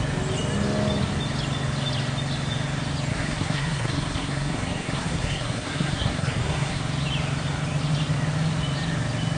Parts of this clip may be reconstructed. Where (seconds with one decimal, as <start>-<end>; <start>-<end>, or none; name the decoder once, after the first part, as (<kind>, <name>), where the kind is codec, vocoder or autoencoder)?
3.1-6.8 (codec, SNAC)